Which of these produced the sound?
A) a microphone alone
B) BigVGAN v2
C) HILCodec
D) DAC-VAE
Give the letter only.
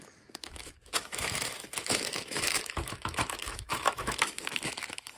D